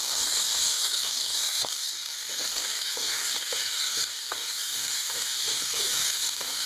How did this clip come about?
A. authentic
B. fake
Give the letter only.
B